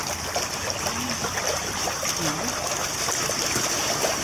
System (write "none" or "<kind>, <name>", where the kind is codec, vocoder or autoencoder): none